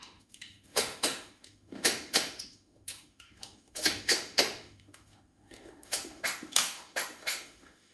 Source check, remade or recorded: remade